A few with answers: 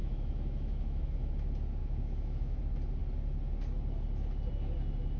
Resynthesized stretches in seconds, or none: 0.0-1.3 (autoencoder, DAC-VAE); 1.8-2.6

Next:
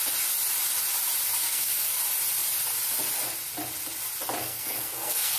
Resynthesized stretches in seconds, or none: 1.4-2.0 (codec, SNAC); 4.4-5.4

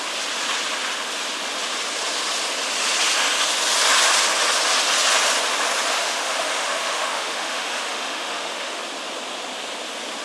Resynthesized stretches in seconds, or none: 6.0-8.8 (autoencoder, DAC-VAE)

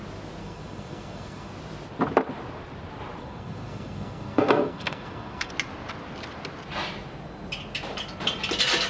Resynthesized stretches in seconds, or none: 0.4-1.5 (codec, SNAC); 3.2-5.5

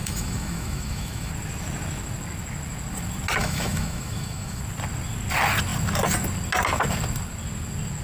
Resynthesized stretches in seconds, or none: 0.0-1.3 (autoencoder, DAC-VAE); 3.4-4.6

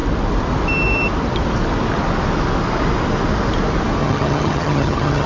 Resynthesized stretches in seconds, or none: 4.0-5.3 (vocoder, HiFi-GAN)

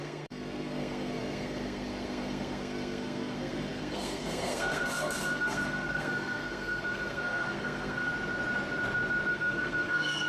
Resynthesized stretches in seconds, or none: 0.0-8.1 (codec, SNAC); 9.3-10.3

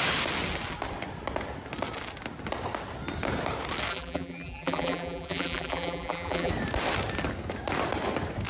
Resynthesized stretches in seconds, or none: 3.9-6.5 (vocoder, BigVGAN v2)